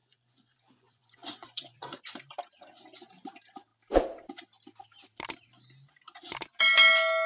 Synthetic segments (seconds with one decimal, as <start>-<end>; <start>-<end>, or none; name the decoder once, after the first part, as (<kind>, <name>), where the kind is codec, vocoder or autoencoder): 0.0-2.0 (vocoder, Vocos)